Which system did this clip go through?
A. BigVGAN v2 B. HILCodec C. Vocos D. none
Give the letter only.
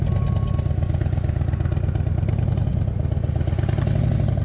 D